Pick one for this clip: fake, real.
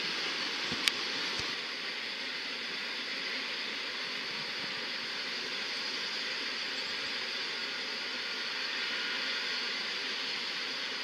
fake